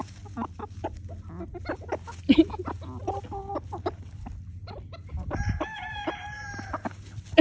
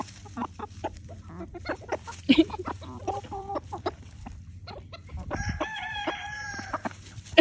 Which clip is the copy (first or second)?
second